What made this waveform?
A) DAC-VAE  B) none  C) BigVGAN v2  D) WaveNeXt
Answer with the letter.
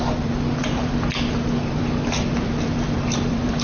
C